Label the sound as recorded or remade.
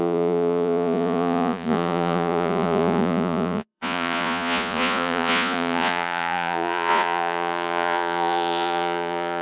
remade